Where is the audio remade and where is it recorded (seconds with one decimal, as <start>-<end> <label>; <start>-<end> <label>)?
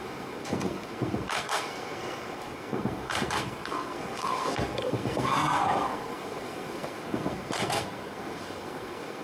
0.0-9.2 remade